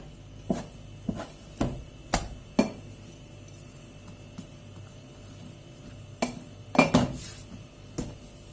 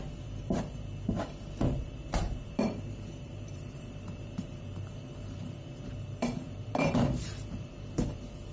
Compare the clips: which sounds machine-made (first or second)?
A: second